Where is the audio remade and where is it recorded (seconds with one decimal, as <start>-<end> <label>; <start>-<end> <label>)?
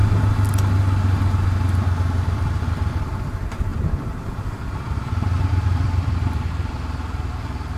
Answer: 0.0-3.7 recorded; 3.7-7.8 remade